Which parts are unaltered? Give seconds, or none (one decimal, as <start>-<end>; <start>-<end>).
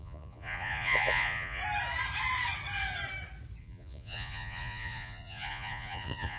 1.6-3.6